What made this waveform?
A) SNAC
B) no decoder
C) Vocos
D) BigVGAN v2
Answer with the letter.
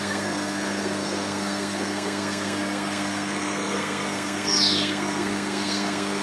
A